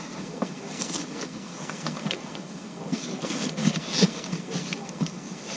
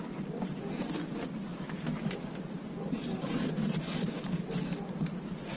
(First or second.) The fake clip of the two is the first